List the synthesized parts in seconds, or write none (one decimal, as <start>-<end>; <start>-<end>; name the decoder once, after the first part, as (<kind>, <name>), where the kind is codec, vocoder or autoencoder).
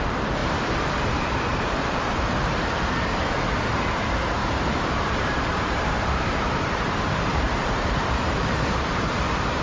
0.4-3.3 (vocoder, BigVGAN v2); 4.4-9.6